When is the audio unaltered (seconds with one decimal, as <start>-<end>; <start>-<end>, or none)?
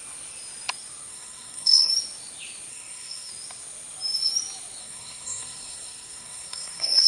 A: 0.0-1.1; 1.9-2.7; 3.3-4.8